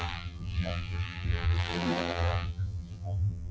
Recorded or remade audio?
remade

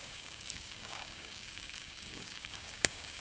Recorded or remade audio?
remade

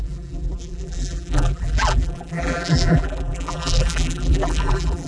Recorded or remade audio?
remade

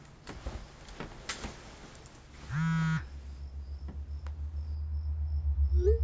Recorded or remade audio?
recorded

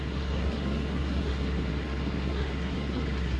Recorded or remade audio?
remade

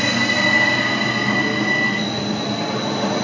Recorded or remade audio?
recorded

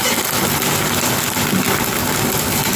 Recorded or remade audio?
recorded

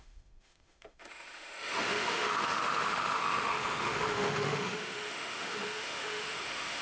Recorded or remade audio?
remade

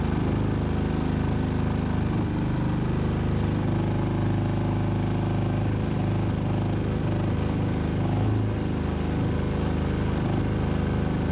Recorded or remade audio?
recorded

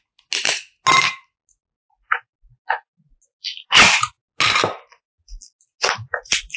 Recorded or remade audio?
recorded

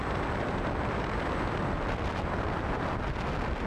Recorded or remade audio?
recorded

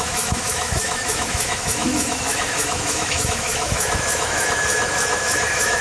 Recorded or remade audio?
remade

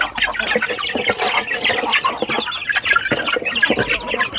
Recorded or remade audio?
recorded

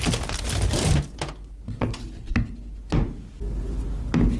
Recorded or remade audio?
recorded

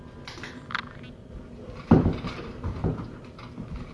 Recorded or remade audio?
recorded